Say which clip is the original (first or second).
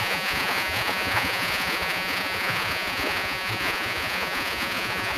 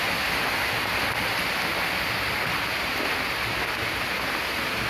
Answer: second